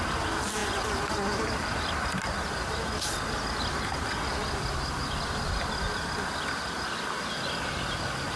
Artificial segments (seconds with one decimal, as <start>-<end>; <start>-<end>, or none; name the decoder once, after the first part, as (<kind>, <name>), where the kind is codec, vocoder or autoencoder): none